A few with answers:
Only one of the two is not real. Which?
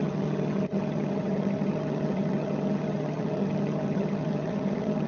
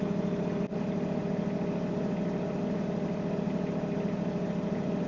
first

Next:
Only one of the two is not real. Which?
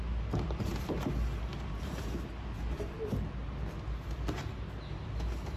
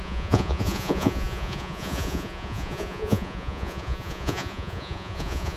second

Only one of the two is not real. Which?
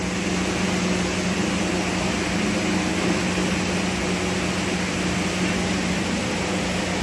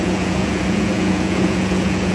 second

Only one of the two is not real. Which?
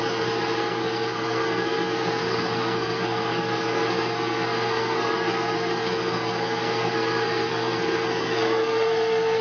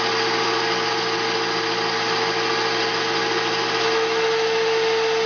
first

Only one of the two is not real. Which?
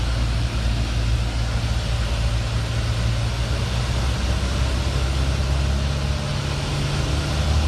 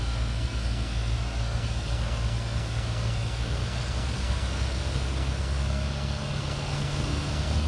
second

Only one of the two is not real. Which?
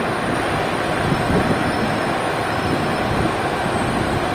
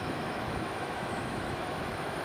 second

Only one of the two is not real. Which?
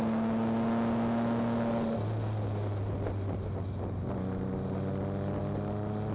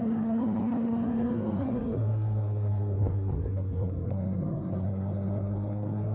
second